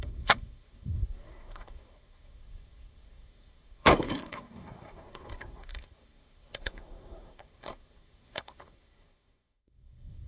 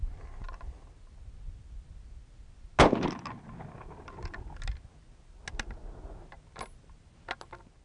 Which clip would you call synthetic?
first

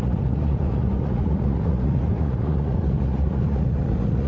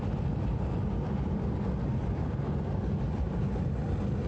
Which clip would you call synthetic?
first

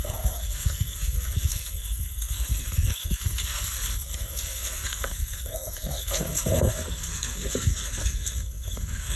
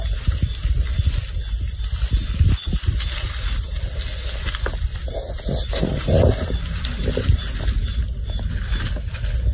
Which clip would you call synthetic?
first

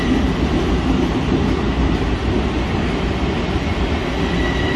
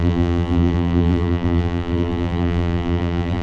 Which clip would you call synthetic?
second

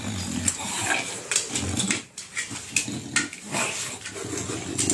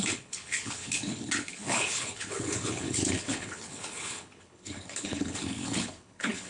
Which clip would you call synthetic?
second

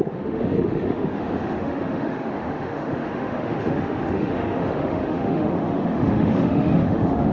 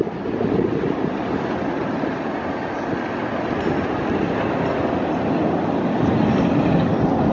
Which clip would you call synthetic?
first